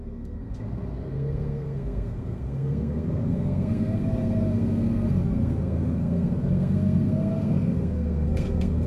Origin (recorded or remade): remade